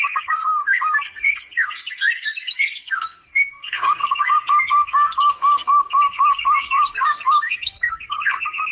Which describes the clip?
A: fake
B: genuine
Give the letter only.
A